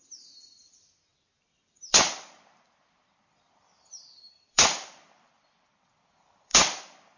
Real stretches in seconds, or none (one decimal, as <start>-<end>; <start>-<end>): none